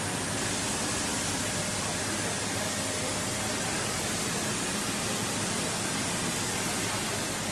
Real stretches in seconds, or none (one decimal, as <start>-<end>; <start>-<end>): 0.0-7.5